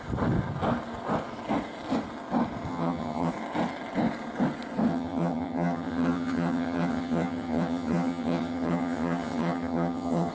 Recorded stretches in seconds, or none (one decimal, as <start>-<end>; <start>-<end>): 0.0-2.7; 3.3-4.9